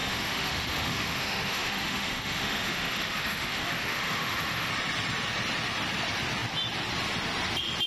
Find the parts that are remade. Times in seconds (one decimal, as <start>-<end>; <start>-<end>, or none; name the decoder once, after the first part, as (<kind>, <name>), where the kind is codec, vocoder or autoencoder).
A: 0.0-4.7 (autoencoder, DAC-VAE)